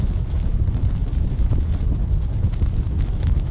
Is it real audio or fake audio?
real